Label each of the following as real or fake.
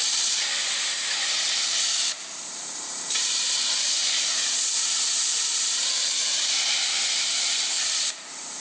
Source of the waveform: fake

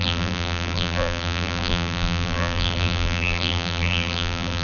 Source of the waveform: fake